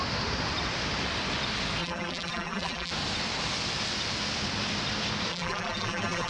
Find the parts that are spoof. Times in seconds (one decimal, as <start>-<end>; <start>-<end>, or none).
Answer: 1.8-2.9; 5.3-6.3